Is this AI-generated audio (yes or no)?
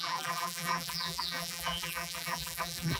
yes